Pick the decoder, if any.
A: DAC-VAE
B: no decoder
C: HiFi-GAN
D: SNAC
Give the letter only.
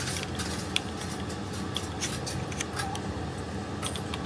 B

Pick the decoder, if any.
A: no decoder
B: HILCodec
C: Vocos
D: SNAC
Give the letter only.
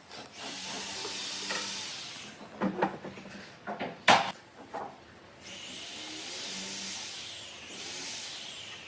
A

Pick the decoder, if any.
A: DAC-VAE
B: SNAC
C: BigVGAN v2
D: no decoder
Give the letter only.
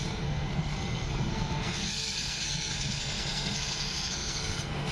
B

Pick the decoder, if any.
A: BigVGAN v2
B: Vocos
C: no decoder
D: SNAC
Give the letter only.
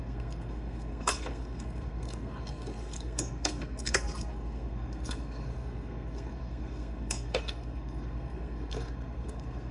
D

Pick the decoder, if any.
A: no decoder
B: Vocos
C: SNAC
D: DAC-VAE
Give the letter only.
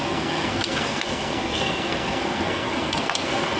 C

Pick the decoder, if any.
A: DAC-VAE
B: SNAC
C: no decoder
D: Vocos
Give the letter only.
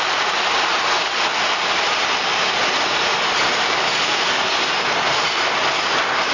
C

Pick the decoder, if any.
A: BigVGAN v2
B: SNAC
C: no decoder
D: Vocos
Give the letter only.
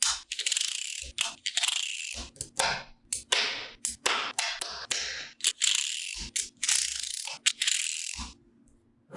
C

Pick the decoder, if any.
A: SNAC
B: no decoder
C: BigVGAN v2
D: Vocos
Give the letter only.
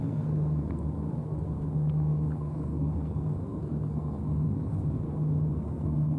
A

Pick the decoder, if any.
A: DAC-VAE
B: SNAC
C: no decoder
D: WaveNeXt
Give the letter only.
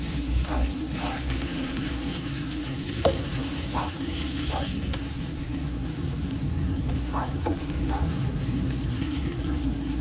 B